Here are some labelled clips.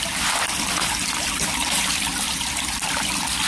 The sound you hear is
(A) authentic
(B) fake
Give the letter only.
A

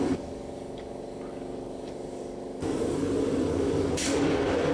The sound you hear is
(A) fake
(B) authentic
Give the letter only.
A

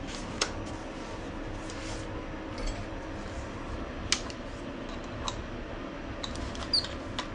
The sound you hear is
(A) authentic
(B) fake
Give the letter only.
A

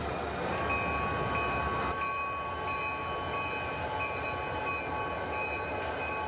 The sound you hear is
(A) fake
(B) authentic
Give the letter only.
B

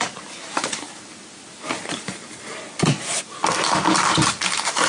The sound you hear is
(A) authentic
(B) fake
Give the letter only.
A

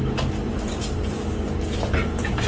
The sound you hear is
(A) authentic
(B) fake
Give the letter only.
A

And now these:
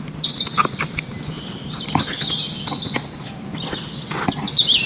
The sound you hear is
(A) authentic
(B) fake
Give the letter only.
A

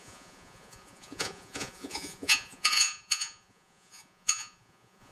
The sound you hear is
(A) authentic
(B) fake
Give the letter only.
B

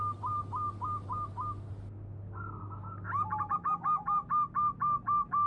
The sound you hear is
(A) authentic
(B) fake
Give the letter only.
A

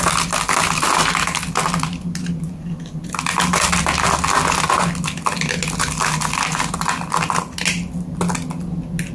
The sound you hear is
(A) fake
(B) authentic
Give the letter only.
B